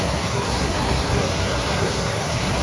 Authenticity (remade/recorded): remade